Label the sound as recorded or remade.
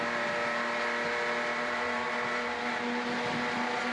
recorded